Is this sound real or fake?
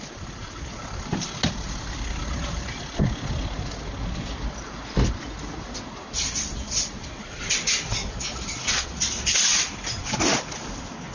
real